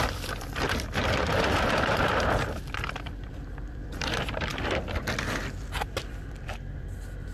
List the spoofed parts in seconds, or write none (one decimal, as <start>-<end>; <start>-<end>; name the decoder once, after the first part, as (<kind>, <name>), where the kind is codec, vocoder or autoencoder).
0.0-4.5 (vocoder, BigVGAN v2); 5.0-7.3